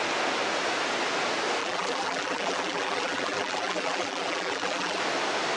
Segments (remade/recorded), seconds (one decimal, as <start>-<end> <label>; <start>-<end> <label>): 0.0-1.6 recorded; 1.6-5.0 remade; 5.0-5.6 recorded